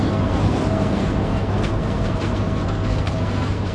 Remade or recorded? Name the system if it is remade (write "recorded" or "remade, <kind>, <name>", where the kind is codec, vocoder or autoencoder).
remade, codec, SNAC